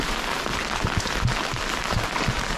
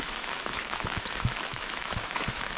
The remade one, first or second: second